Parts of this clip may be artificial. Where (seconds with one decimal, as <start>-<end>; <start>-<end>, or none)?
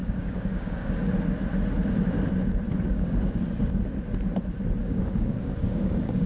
0.0-0.9; 2.9-3.4; 4.8-6.3